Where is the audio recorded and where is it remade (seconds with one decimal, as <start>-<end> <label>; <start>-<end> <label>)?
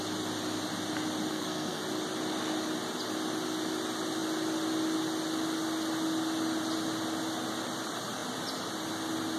0.0-1.3 recorded; 1.3-1.8 remade; 1.8-9.4 recorded